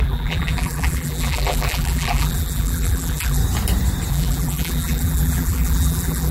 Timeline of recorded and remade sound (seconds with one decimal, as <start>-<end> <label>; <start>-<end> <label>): 0.0-3.4 remade; 3.4-4.1 recorded; 4.1-6.3 remade